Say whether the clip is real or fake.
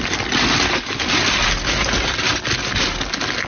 real